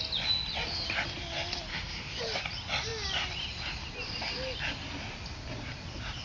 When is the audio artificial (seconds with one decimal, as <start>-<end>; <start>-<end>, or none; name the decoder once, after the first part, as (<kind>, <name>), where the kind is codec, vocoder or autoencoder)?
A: 1.7-2.2 (autoencoder, DAC-VAE)